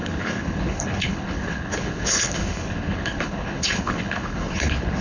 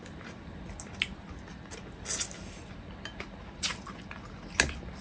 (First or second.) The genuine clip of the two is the second